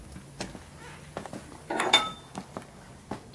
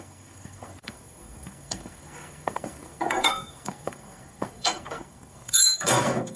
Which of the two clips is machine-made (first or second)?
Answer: second